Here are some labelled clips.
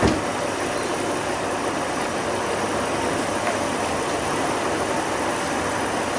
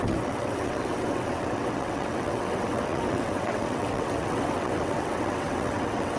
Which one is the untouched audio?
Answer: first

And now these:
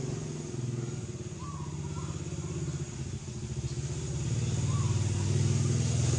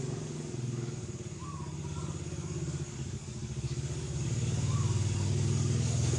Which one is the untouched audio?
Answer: first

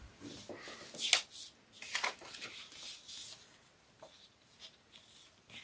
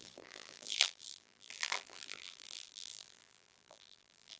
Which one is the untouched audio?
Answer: first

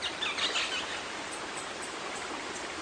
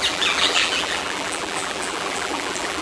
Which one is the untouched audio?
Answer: first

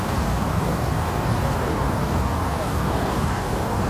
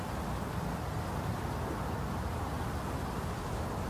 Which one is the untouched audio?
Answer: second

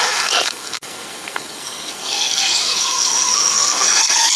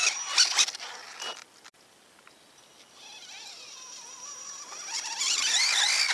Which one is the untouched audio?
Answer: second